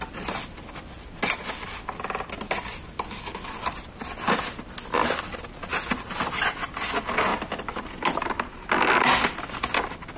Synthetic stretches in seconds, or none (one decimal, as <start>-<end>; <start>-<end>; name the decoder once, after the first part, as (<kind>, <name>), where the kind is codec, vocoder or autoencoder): none

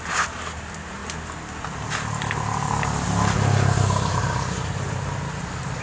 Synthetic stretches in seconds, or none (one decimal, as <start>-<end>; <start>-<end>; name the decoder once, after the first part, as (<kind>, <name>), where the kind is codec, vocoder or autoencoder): 0.0-1.0 (vocoder, BigVGAN v2); 3.8-5.8

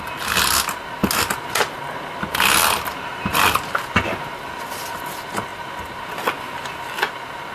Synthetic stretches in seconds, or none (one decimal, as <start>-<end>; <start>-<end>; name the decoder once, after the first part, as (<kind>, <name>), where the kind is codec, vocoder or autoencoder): none

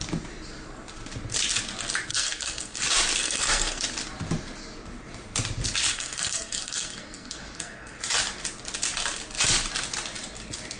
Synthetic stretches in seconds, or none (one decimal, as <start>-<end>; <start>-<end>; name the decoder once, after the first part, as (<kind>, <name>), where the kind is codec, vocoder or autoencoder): 2.1-2.8 (codec, SNAC); 3.2-3.8; 5.9-8.0

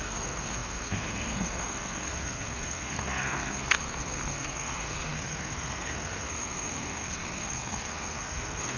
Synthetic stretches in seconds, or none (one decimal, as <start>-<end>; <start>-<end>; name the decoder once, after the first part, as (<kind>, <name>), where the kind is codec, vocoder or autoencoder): 0.0-8.8 (codec, SNAC)